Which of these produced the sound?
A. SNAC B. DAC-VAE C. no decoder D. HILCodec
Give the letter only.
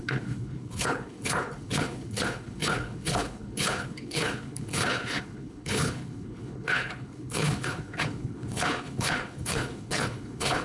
D